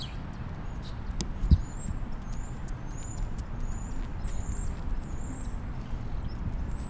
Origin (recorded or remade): recorded